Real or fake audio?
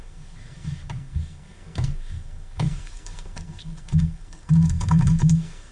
fake